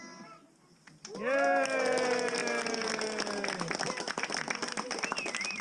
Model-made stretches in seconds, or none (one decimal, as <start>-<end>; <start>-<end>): none